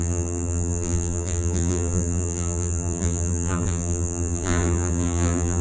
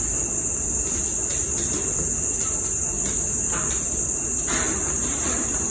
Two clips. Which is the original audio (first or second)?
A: second